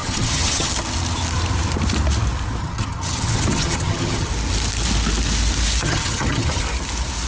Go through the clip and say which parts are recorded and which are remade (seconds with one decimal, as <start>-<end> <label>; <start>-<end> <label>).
0.0-0.7 remade; 0.7-2.6 recorded; 2.6-4.3 remade; 4.3-5.8 recorded; 5.8-6.6 remade; 6.6-7.3 recorded